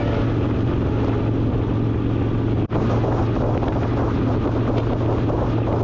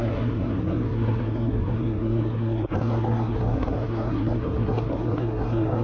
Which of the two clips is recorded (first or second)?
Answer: first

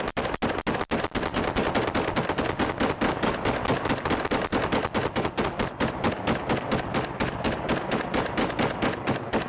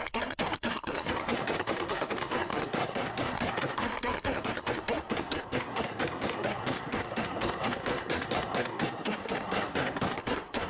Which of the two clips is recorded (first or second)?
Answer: first